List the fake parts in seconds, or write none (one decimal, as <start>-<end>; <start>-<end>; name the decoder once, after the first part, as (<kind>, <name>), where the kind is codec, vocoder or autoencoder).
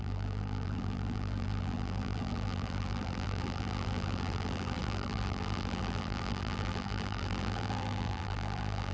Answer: 0.0-8.9 (vocoder, BigVGAN v2)